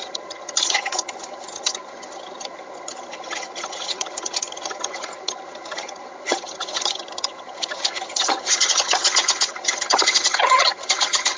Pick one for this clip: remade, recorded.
remade